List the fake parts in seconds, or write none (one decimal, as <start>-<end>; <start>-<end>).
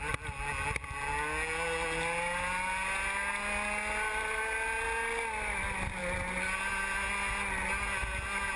none